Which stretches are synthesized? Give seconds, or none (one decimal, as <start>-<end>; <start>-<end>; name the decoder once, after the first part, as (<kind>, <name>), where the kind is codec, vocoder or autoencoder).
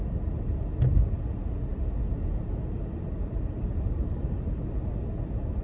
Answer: none